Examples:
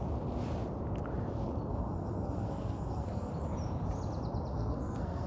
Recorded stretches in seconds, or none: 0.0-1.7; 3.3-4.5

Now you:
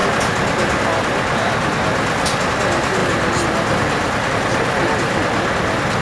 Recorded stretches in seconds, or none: 0.0-6.0

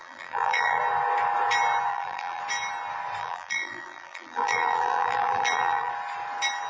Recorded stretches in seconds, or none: 0.8-1.9; 2.4-3.2; 5.9-6.7